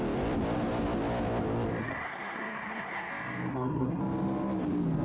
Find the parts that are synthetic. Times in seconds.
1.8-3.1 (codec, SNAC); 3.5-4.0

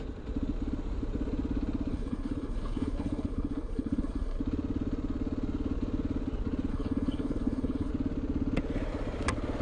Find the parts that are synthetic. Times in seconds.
1.9-4.4 (codec, HILCodec); 6.7-7.9